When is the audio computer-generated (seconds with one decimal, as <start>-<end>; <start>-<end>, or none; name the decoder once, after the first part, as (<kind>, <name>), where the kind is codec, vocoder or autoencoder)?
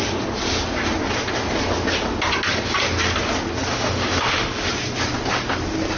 3.7-4.7 (autoencoder, DAC-VAE)